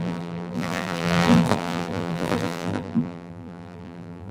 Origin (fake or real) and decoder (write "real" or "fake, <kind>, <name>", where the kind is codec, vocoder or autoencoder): fake, vocoder, BigVGAN v2